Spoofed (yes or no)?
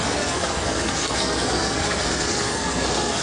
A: yes